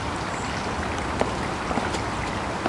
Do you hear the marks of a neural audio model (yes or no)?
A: no